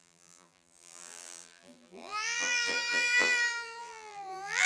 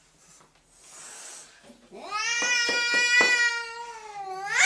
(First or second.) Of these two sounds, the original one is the second